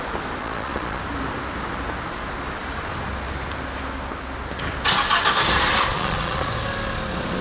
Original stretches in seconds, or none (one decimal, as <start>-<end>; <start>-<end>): 0.0-0.4; 1.0-5.9; 6.5-7.4